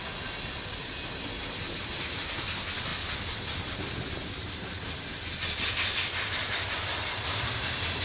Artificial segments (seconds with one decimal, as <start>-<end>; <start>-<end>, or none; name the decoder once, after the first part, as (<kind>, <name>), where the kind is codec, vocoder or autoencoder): none